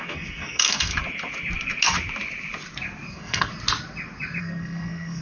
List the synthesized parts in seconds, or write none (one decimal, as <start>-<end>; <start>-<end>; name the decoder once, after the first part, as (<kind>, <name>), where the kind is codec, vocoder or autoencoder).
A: 0.0-0.9 (codec, SNAC); 3.1-3.5; 4.4-5.2